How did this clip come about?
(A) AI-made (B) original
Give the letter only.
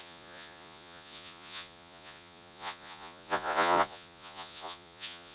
A